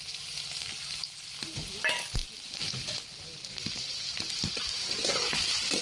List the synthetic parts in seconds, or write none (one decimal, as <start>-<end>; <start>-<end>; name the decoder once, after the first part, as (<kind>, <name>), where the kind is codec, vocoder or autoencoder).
0.0-2.2 (vocoder, BigVGAN v2); 2.9-5.8